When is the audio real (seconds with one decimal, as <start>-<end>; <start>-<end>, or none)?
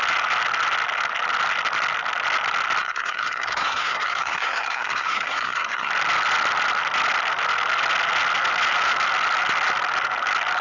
0.0-2.8; 5.9-10.6